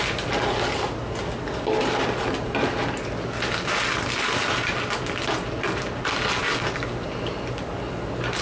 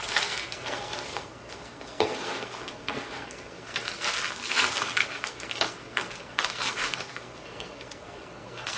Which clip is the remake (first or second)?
second